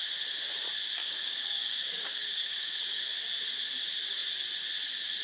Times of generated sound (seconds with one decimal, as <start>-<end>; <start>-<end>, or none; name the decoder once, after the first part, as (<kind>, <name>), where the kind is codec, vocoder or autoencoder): 1.0-3.2 (codec, DAC)